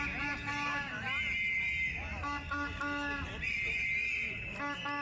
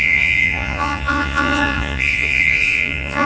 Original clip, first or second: first